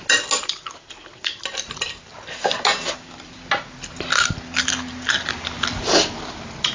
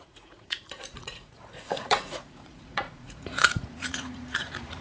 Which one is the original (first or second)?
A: first